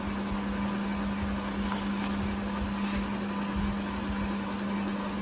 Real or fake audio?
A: real